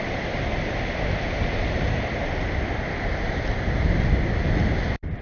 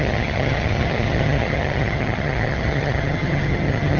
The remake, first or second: second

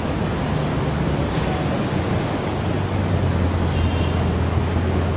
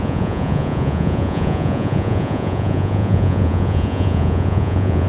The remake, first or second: second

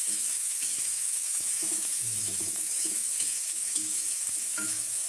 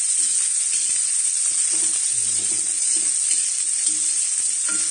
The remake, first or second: first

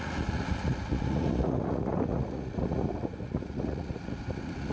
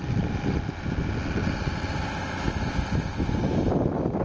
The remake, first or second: first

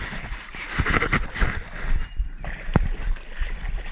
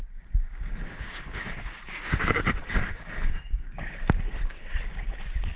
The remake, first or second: second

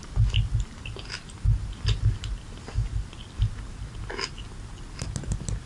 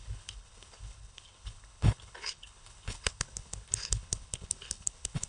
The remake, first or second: second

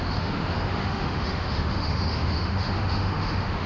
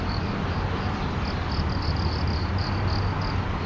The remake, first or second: first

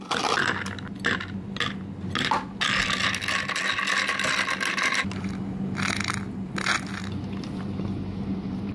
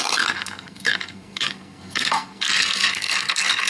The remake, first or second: second